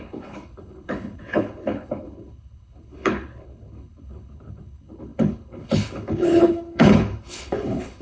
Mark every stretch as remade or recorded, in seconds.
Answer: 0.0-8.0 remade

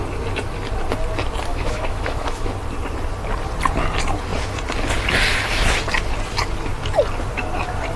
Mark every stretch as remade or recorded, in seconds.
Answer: 0.0-1.5 recorded; 1.5-2.5 remade; 2.5-8.0 recorded

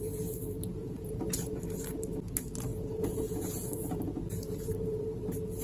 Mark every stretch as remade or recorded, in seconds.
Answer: 0.0-0.8 recorded; 0.8-1.6 remade; 1.6-2.7 recorded; 2.7-3.4 remade; 3.4-5.6 recorded